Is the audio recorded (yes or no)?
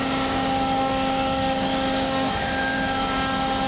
no